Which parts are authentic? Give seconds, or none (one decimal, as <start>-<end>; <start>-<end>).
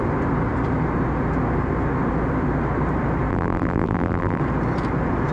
0.0-3.3; 4.4-5.3